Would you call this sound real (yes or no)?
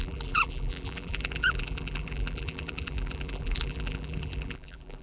no